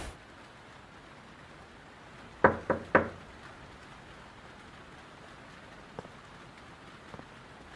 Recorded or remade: recorded